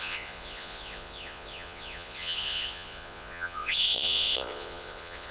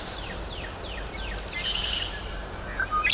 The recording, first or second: second